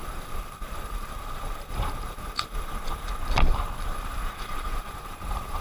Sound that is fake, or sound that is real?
fake